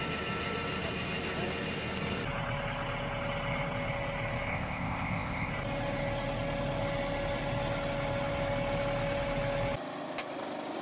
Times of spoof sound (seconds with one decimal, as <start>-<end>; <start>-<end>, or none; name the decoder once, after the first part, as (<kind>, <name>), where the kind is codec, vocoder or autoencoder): 4.5-5.5 (codec, ZipCodec)